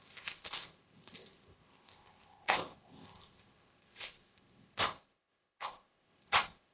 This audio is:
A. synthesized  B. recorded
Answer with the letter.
A